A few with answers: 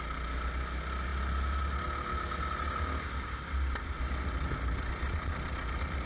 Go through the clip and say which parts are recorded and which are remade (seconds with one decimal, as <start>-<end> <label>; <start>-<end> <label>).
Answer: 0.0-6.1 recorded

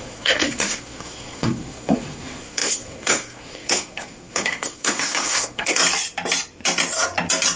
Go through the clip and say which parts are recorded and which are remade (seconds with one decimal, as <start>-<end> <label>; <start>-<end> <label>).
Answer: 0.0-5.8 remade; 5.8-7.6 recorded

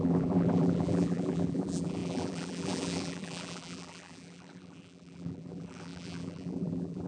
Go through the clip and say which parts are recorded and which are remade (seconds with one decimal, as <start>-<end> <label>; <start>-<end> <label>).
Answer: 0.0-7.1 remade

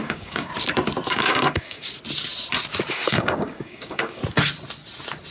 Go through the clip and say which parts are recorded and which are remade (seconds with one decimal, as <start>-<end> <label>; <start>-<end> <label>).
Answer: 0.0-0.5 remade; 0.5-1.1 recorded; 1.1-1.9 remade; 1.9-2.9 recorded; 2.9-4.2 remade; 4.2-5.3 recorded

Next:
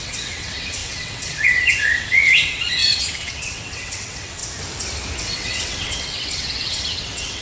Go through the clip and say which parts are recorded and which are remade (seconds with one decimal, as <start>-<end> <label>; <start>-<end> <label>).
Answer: 0.0-4.4 remade; 4.4-5.2 recorded; 5.2-7.4 remade